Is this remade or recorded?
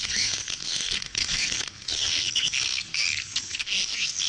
remade